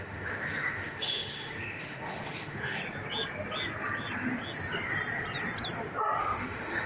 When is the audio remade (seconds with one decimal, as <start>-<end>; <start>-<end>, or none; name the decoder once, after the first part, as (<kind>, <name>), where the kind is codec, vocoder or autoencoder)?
0.0-2.8 (autoencoder, DAC-VAE); 6.2-6.9